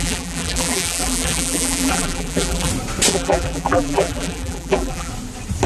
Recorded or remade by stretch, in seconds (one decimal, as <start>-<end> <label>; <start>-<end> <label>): 0.0-2.7 remade; 2.7-3.1 recorded; 3.1-5.1 remade; 5.1-5.7 recorded